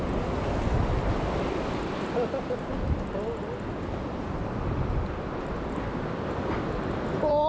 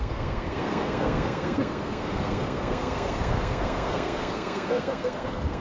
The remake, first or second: second